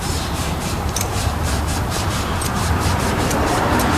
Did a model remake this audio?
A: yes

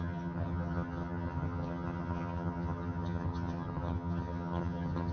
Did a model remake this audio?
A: yes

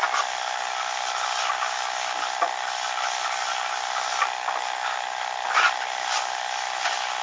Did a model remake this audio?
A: no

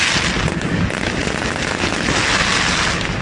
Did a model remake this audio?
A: no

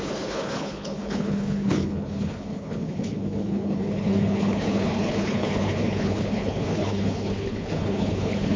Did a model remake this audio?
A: yes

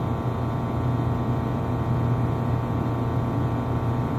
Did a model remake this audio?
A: no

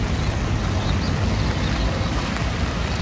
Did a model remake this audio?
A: no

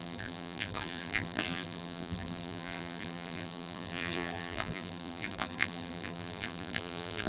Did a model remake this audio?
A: yes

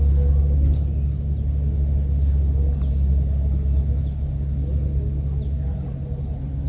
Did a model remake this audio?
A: no